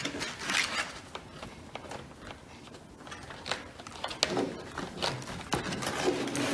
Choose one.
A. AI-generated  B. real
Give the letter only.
B